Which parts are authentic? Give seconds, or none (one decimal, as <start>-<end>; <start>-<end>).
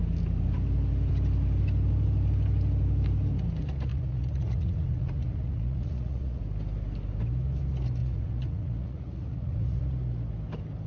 0.0-3.9; 6.4-8.0; 9.8-10.9